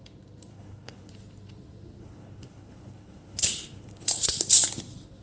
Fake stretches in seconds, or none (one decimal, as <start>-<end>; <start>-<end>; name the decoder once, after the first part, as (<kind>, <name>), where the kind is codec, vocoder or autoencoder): 0.5-1.1 (codec, HILCodec); 2.0-4.4